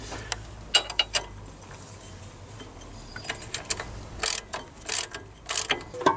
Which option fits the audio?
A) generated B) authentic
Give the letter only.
B